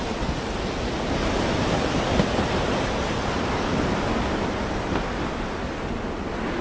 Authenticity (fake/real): real